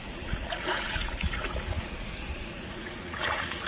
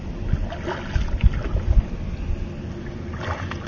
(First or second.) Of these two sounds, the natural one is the second